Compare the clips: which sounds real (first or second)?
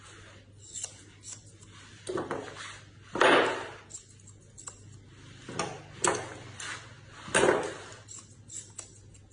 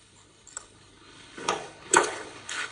first